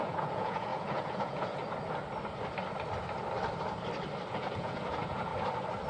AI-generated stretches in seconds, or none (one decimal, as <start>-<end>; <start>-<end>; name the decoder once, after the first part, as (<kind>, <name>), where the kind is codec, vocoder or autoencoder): 0.0-1.6 (vocoder, Vocos); 4.3-5.3